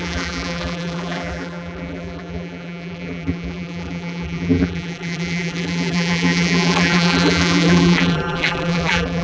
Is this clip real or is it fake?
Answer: fake